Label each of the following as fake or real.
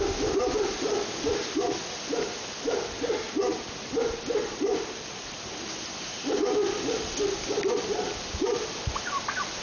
real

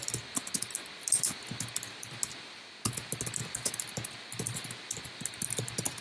real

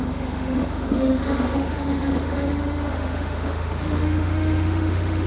fake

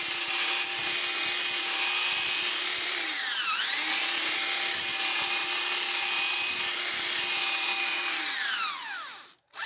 real